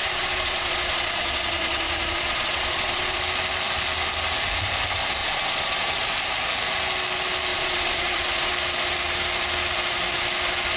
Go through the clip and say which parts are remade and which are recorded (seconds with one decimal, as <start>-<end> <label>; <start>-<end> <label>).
0.0-3.2 remade; 3.2-5.2 recorded; 5.2-5.9 remade; 5.9-7.5 recorded; 7.5-8.5 remade; 8.5-10.8 recorded